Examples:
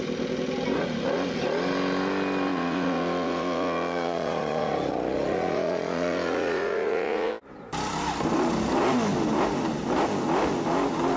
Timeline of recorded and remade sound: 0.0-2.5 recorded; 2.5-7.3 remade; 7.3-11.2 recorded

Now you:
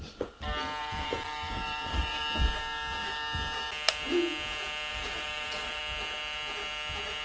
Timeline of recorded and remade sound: 0.0-0.8 recorded; 0.8-2.2 remade; 2.2-4.9 recorded; 4.9-5.8 remade; 5.8-7.2 recorded

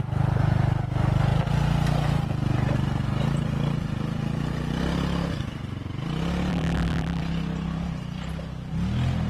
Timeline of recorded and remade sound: 0.0-6.5 recorded; 6.5-7.2 remade; 7.2-9.3 recorded